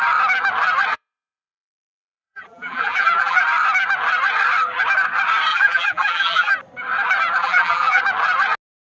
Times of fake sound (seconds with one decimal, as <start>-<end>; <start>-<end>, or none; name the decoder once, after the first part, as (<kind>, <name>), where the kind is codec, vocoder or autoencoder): 0.9-3.4 (vocoder, BigVGAN v2); 5.5-6.5; 7.4-8.0